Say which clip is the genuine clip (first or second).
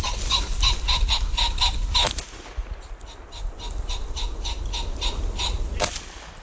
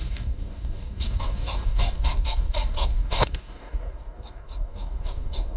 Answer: first